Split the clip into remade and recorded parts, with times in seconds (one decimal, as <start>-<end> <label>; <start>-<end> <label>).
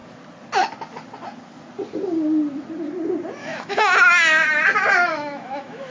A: 0.0-3.4 recorded; 3.4-3.9 remade; 3.9-5.1 recorded; 5.1-5.9 remade